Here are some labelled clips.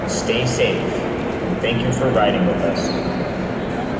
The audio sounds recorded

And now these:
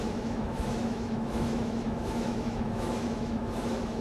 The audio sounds remade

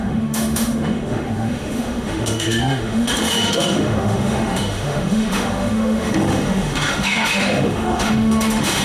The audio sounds remade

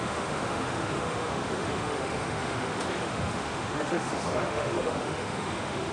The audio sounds remade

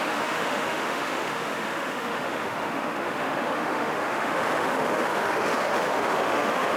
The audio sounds remade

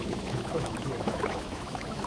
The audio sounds remade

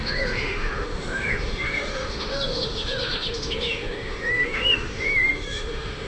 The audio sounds remade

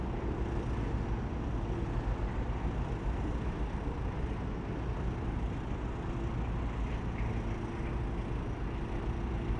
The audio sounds recorded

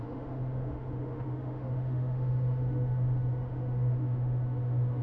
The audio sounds remade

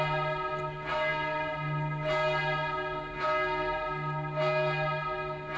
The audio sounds recorded